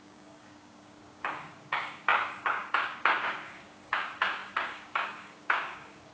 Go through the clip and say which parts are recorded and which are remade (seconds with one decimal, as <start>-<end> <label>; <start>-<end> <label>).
0.0-6.1 remade